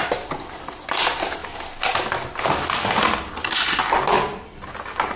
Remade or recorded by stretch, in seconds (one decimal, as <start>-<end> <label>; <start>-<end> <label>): 0.0-5.2 recorded